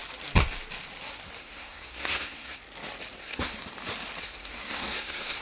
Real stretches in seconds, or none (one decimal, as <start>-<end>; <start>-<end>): 0.0-1.4; 2.6-3.2; 3.6-4.2